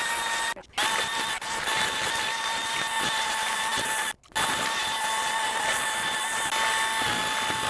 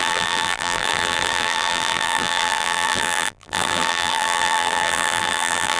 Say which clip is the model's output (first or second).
second